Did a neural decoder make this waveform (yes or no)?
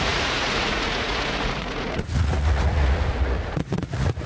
yes